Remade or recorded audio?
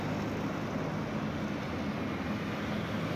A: recorded